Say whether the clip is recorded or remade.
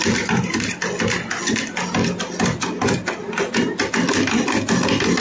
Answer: recorded